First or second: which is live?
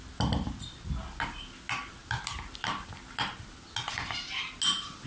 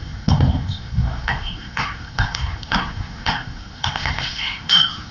first